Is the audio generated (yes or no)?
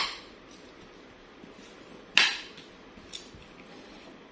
no